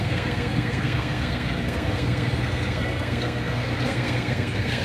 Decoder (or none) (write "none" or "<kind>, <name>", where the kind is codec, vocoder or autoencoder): codec, SNAC